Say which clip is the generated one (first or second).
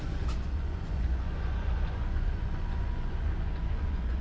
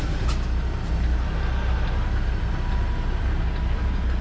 first